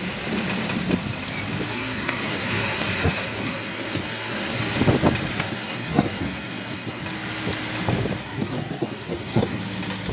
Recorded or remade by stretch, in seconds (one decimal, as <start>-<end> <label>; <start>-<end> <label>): 0.0-1.7 recorded; 1.7-4.6 remade; 4.6-5.3 recorded; 5.3-7.0 remade; 7.0-8.2 recorded; 8.2-9.6 remade; 9.6-10.1 recorded